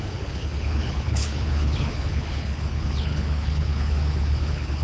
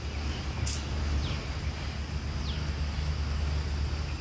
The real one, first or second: second